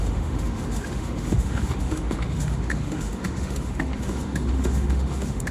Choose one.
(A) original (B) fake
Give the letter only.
B